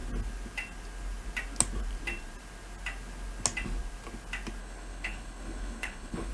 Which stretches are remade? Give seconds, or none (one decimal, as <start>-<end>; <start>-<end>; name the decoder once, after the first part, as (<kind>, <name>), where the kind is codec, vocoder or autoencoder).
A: 4.6-6.3 (codec, HILCodec)

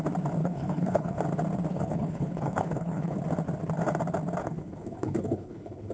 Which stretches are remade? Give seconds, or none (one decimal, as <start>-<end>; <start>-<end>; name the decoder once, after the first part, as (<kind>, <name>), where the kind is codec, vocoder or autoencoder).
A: 0.4-1.2 (codec, HILCodec); 1.7-3.2; 4.4-5.9

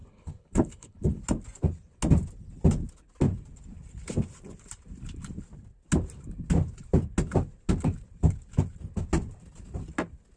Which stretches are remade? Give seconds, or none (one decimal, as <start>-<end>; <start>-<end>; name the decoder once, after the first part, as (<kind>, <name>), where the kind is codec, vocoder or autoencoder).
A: 0.0-1.2 (codec, HILCodec)

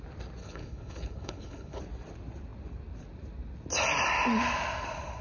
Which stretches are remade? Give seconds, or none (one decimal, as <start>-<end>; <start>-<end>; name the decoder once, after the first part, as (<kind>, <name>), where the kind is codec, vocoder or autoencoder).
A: 0.4-1.8 (codec, HILCodec)

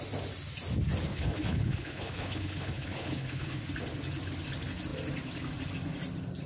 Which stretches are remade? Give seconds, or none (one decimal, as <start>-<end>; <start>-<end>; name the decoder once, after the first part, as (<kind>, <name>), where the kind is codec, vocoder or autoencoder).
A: 1.1-3.6 (codec, HILCodec)

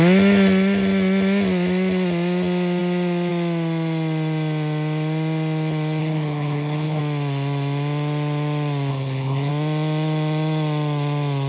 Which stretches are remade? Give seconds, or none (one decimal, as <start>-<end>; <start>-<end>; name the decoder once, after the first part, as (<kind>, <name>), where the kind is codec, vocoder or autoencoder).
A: 6.0-7.0 (codec, HILCodec); 8.9-9.5

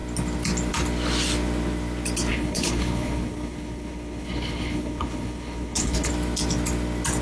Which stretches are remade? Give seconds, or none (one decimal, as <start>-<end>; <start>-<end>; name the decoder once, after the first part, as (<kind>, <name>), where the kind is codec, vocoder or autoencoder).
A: 2.3-6.1 (codec, HILCodec)